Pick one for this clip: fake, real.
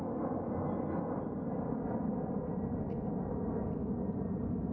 real